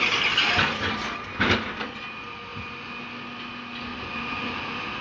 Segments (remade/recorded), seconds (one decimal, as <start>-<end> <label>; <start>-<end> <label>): 0.0-3.9 recorded; 3.9-4.6 remade; 4.6-5.0 recorded